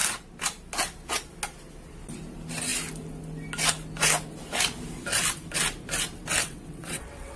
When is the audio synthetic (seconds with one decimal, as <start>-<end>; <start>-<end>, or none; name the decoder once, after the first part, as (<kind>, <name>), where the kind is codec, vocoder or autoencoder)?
6.4-7.4 (vocoder, WaveNeXt)